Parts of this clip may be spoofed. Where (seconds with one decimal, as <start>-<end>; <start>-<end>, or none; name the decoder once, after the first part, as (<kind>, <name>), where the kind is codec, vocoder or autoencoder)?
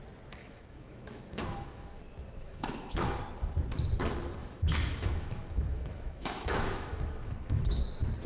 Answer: 0.4-2.0 (autoencoder, DAC-VAE); 2.4-3.2; 4.4-7.8